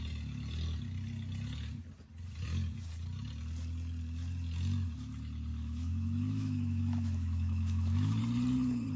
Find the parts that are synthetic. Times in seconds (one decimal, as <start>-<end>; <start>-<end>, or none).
5.5-8.2